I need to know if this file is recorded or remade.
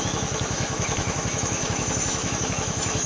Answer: remade